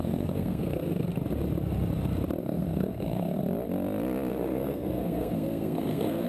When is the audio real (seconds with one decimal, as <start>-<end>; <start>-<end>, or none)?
1.1-2.4; 3.4-4.3